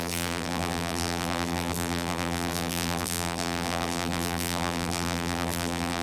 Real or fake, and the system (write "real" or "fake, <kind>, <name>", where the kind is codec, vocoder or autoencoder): fake, vocoder, BigVGAN v2